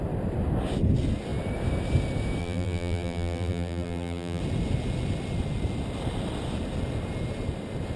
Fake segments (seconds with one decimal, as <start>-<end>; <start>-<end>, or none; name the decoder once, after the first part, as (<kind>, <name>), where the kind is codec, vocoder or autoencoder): 2.4-4.4 (vocoder, BigVGAN v2)